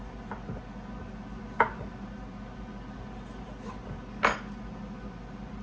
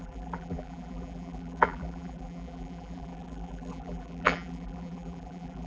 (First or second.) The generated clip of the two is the second